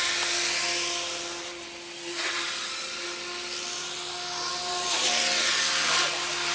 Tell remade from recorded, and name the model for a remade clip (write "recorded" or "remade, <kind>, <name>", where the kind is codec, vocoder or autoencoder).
recorded